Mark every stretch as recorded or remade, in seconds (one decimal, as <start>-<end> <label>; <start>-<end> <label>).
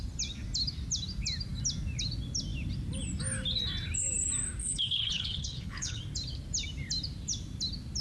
0.0-4.6 recorded; 4.6-6.0 remade; 6.0-8.0 recorded